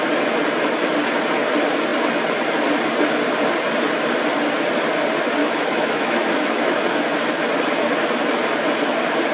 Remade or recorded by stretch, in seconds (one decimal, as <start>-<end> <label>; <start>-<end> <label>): 0.0-5.4 recorded; 5.4-6.8 remade; 6.8-9.3 recorded